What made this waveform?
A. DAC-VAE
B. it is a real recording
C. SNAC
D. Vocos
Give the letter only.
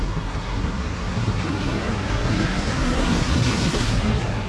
C